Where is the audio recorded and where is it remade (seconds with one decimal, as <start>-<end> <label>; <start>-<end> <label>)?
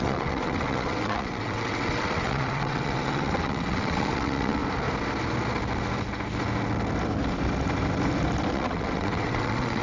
0.0-4.6 remade; 4.6-8.5 recorded; 8.5-9.8 remade